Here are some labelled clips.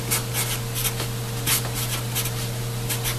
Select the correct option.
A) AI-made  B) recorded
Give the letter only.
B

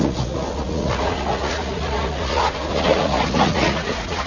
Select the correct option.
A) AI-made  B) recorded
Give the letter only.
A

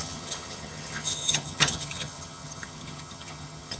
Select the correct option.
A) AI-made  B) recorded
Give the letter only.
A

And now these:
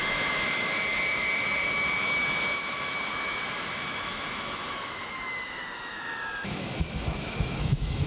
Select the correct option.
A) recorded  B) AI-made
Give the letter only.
B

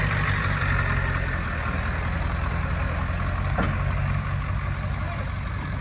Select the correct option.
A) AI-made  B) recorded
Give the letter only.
B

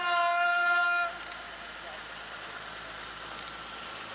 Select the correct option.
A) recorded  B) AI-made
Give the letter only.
A